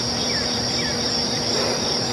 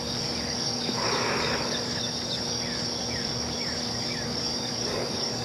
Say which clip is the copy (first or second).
second